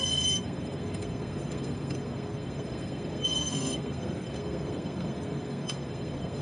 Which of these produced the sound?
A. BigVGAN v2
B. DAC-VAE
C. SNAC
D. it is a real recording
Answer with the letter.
C